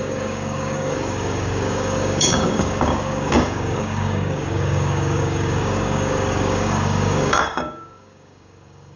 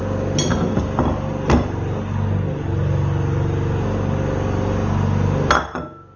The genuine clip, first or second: second